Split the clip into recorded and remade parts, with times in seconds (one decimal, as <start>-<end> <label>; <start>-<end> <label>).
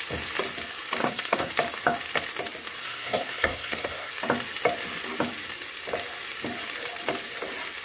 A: 0.0-1.0 recorded; 1.0-1.5 remade; 1.5-2.8 recorded; 2.8-4.1 remade; 4.1-7.8 recorded